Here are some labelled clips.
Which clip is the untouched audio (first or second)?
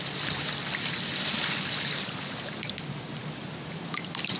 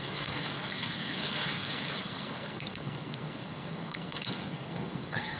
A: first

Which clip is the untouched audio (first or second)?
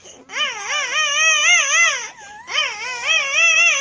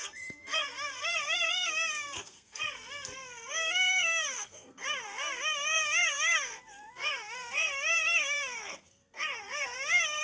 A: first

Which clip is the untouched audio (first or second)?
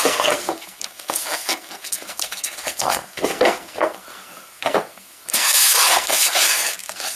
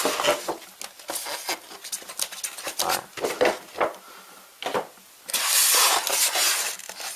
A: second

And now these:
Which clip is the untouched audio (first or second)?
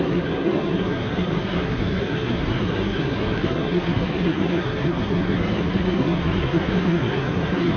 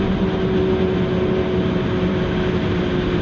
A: second